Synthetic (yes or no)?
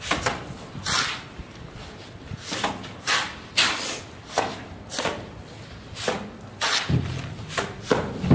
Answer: no